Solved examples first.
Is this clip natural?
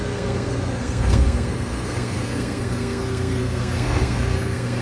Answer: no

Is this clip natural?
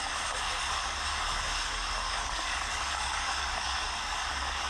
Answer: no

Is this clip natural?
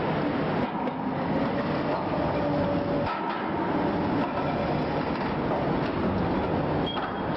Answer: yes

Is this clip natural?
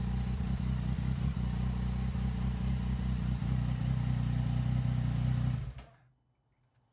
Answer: yes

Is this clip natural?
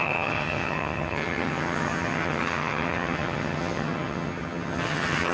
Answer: no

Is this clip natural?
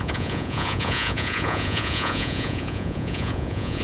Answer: no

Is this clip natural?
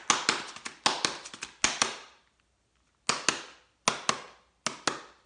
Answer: yes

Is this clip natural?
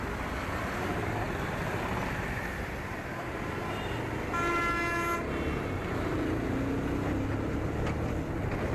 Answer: yes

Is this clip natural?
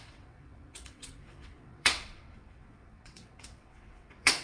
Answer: no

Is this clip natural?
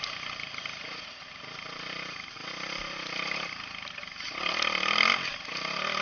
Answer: yes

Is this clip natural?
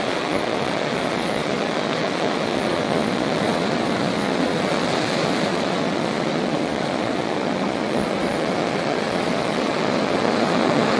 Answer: no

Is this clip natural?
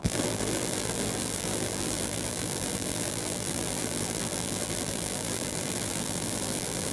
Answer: no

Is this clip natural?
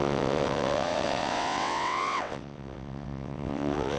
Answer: no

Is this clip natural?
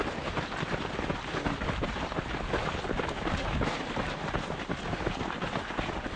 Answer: yes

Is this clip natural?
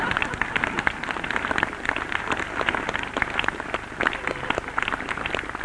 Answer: yes